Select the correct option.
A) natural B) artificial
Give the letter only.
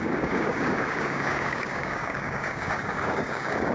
B